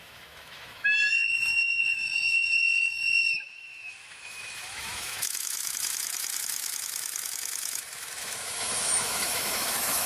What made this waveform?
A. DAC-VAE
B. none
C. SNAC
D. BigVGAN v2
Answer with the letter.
A